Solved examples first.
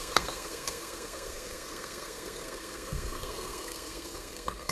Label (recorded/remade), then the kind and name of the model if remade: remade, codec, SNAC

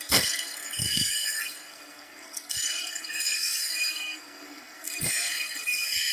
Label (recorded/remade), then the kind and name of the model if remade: remade, codec, SNAC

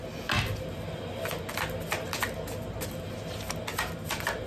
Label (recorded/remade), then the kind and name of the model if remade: recorded